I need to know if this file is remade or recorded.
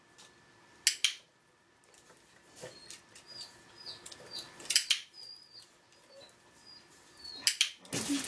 recorded